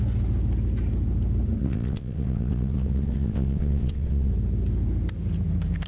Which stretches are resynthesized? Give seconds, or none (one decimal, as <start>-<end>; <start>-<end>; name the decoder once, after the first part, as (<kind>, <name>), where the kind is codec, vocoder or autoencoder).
1.6-4.3 (vocoder, WaveNeXt)

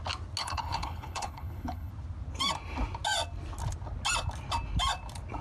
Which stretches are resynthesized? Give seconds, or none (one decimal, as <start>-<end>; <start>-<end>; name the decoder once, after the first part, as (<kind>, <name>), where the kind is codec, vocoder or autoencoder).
0.4-1.9 (codec, HILCodec)

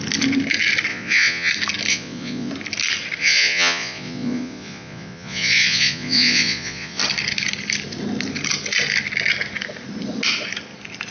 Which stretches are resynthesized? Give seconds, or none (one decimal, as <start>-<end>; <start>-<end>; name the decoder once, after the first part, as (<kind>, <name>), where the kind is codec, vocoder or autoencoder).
0.9-1.5 (vocoder, Vocos); 1.9-2.5; 3.2-7.0

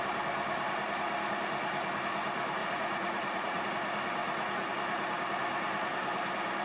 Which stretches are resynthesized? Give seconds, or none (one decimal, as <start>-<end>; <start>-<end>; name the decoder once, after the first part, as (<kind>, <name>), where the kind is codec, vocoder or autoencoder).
2.6-3.7 (vocoder, Vocos); 4.2-4.7

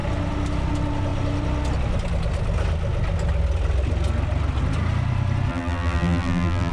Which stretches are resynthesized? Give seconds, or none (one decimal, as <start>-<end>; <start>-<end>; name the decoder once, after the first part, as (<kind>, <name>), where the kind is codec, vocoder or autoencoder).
5.5-6.7 (vocoder, BigVGAN v2)

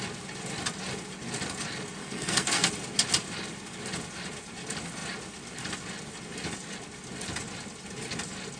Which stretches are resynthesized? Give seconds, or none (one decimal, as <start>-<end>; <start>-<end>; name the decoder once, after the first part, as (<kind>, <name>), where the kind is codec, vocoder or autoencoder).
2.0-2.7 (codec, SNAC)

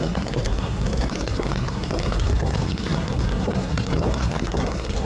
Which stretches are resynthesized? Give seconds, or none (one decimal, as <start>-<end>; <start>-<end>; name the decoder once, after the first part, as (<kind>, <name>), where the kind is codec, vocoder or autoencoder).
0.0-5.1 (codec, SNAC)

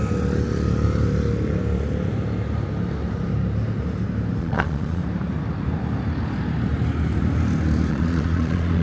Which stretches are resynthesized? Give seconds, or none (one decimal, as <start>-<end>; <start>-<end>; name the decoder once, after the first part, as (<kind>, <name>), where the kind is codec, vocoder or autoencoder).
4.4-5.0 (vocoder, Vocos); 7.9-8.8